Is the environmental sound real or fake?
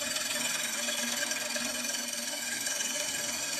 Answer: fake